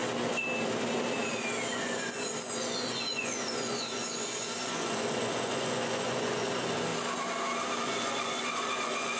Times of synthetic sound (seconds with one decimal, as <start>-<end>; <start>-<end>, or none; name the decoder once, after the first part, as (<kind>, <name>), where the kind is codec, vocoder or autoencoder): 1.7-6.9 (vocoder, Vocos); 7.8-9.2